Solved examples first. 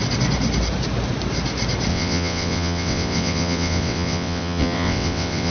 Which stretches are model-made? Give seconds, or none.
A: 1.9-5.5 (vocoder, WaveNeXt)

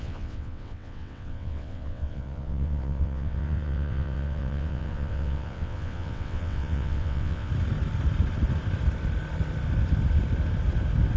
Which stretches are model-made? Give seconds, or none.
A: 0.0-7.5 (vocoder, WaveNeXt)